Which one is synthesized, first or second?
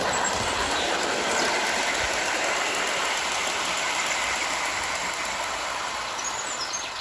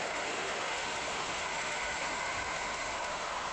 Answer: second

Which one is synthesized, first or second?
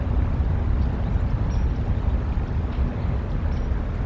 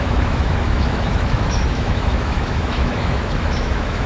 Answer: second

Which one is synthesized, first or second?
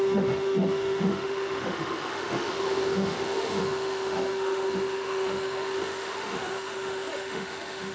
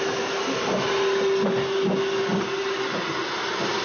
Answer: first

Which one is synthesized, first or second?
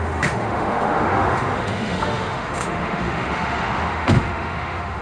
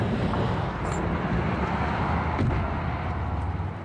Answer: first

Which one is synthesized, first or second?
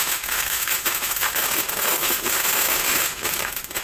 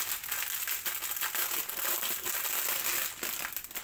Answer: first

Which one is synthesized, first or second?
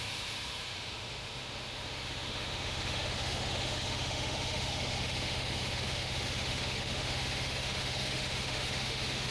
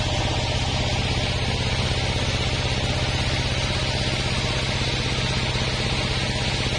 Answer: first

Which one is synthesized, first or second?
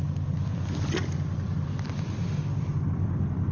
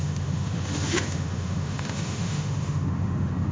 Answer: second